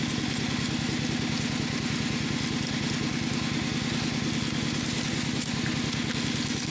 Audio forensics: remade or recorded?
recorded